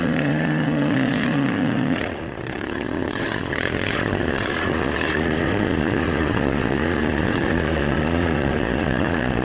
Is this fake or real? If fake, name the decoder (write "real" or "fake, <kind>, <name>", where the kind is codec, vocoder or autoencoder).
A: fake, vocoder, Vocos